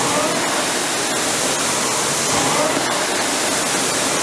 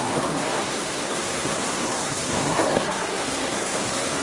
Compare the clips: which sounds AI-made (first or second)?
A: second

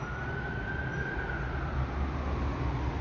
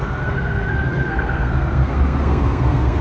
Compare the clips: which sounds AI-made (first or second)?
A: second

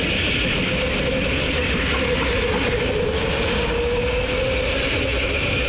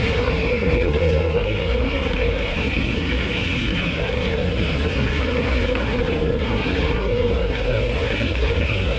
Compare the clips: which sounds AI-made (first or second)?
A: second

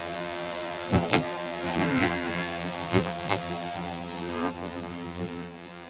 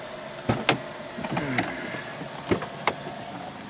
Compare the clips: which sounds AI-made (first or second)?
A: first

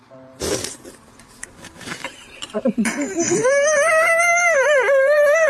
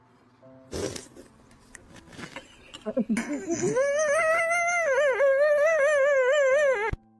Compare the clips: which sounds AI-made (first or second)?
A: first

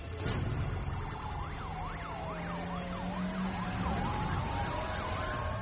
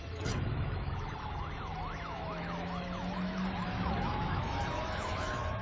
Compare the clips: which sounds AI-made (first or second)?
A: second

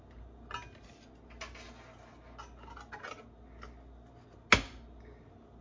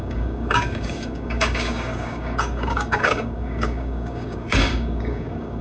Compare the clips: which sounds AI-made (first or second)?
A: second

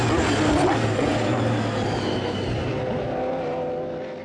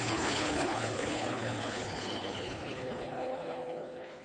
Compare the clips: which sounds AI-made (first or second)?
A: second